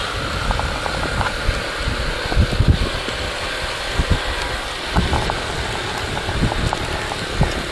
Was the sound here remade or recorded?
recorded